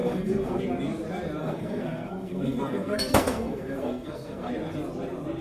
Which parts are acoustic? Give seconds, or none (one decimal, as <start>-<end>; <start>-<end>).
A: 0.6-1.4; 4.5-5.4